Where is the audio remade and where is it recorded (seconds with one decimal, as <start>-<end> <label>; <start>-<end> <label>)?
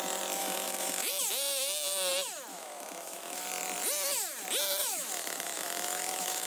0.0-0.4 recorded; 0.4-1.1 remade; 1.1-2.5 recorded; 2.5-3.4 remade; 3.4-4.8 recorded; 4.8-6.5 remade